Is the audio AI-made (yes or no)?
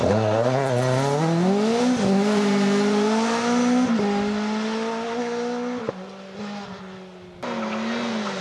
no